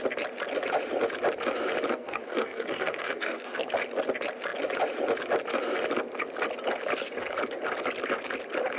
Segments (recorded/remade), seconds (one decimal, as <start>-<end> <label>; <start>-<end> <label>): 0.0-1.9 recorded; 1.9-3.7 remade; 3.7-8.8 recorded